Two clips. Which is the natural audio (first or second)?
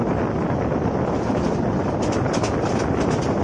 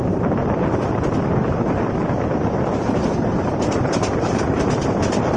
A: first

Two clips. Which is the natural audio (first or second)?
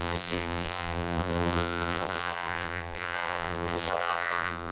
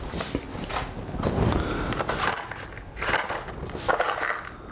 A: second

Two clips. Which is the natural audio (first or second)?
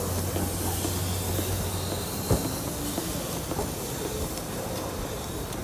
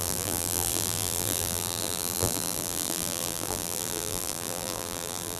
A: first